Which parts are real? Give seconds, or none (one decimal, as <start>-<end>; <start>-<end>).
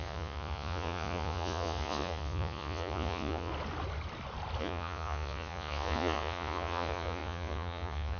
3.5-4.6